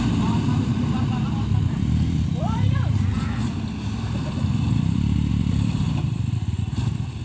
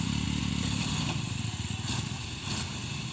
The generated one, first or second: first